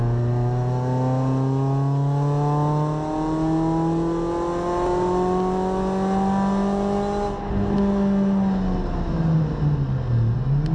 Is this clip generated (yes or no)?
no